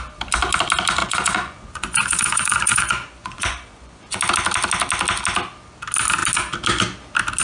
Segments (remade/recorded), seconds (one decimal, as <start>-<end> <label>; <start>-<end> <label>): 0.0-1.0 recorded; 1.0-4.2 remade; 4.2-7.4 recorded